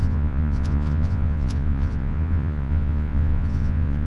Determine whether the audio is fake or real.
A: fake